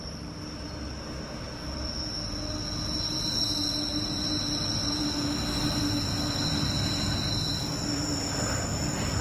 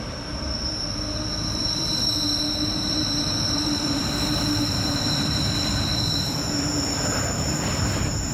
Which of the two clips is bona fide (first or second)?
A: first